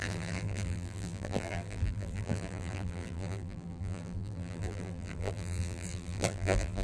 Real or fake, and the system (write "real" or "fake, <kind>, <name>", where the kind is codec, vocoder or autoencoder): fake, vocoder, BigVGAN v2